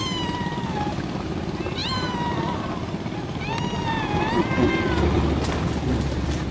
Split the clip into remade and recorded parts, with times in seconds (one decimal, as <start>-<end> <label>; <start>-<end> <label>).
0.0-6.5 recorded